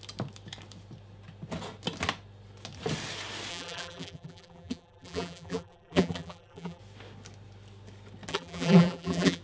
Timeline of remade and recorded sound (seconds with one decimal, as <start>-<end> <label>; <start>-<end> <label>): 0.0-3.5 recorded; 3.5-6.8 remade; 6.8-8.3 recorded; 8.3-9.4 remade

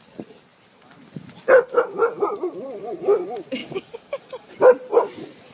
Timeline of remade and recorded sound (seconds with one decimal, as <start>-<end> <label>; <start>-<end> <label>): 0.0-3.6 recorded; 3.6-4.5 remade; 4.5-5.5 recorded

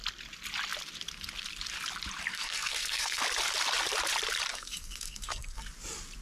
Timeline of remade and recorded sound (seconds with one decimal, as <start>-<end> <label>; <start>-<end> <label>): 0.0-2.3 recorded; 2.3-3.2 remade; 3.2-4.5 recorded; 4.5-5.7 remade; 5.7-6.2 recorded

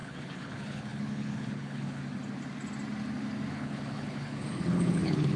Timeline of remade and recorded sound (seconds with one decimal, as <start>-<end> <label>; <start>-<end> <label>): 0.0-2.0 remade; 2.0-3.5 recorded; 3.5-5.4 remade